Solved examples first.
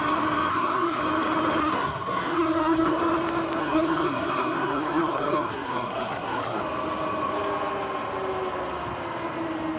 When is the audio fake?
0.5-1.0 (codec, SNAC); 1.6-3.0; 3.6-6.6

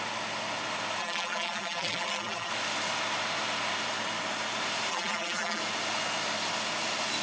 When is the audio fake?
1.0-2.5 (vocoder, BigVGAN v2); 4.9-5.6

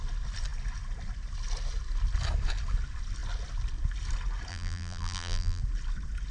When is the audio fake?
4.5-5.6 (vocoder, BigVGAN v2)